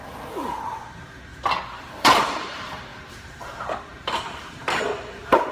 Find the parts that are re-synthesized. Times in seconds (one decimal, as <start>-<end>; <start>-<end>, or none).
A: 0.0-1.3; 1.8-5.5